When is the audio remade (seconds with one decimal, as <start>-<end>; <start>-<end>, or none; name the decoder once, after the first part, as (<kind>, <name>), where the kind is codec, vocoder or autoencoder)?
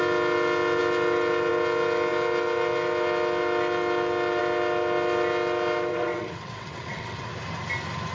5.9-7.3 (vocoder, WaveNeXt)